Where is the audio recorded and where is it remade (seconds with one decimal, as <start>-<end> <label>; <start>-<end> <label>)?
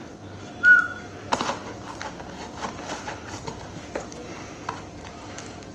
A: 0.0-5.7 recorded